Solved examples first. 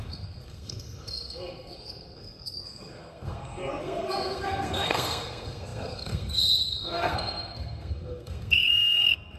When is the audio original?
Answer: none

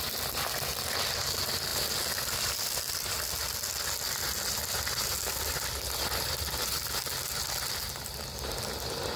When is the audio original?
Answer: 0.0-9.2

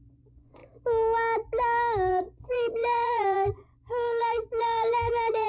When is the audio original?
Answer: 0.6-2.1

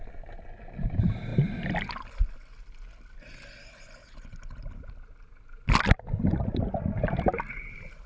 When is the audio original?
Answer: 0.0-8.1